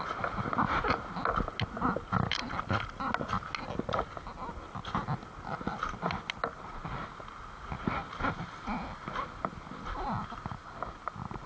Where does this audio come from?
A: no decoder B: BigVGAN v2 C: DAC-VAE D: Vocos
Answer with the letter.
A